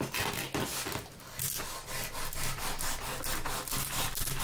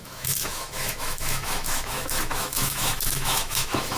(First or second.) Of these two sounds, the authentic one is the first